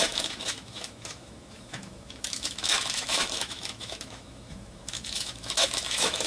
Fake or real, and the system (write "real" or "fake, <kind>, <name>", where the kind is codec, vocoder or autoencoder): fake, autoencoder, DAC-VAE